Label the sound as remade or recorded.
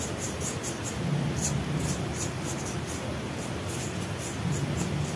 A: recorded